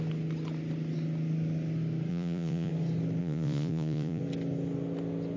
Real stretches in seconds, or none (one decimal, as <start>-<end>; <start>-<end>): 0.0-2.1; 2.7-3.2; 4.2-5.4